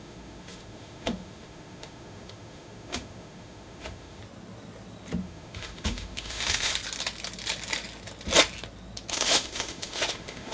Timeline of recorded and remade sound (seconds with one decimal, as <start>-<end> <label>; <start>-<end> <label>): 0.0-4.2 remade; 4.2-5.2 recorded; 5.2-6.7 remade; 6.7-9.1 recorded; 9.1-10.5 remade